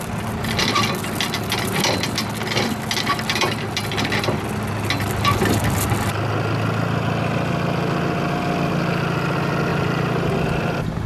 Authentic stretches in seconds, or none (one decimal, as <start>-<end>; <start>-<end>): 0.0-9.7; 10.3-11.1